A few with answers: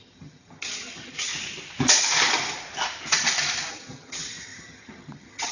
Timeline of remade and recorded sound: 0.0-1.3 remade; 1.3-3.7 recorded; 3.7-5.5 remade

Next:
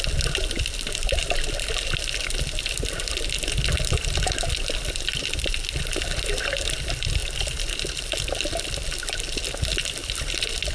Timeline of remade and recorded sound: 0.0-10.0 recorded; 10.0-10.7 remade

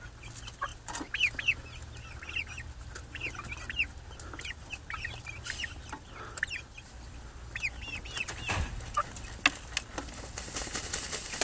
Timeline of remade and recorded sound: 0.0-11.4 recorded

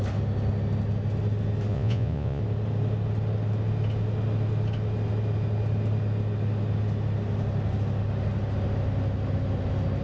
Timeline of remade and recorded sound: 0.0-1.7 recorded; 1.7-2.4 remade; 2.4-10.0 recorded